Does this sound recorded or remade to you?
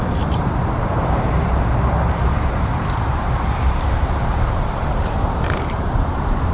remade